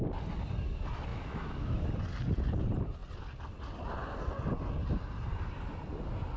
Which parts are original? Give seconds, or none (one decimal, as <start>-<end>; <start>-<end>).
0.0-1.1; 1.9-6.4